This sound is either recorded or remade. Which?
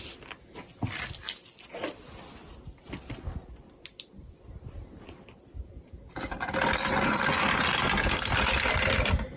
recorded